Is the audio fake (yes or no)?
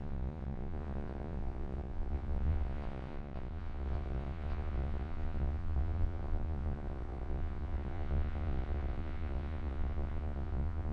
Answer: yes